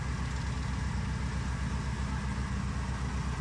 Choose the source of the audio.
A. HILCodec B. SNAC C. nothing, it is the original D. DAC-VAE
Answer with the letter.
C